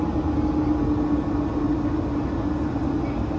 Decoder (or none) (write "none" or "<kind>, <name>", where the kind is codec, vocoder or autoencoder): none